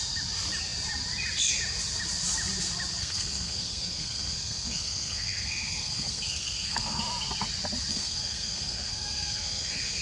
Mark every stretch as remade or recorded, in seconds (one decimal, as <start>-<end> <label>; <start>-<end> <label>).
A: 0.0-3.0 recorded; 3.0-7.0 remade; 7.0-7.9 recorded; 7.9-10.0 remade